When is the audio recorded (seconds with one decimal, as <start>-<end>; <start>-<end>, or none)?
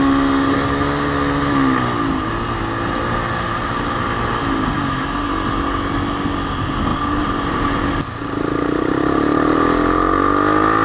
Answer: 0.0-6.9; 7.8-10.8